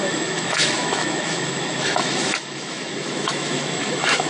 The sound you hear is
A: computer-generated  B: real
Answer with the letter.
A